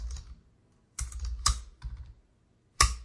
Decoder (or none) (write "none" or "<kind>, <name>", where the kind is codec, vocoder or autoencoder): none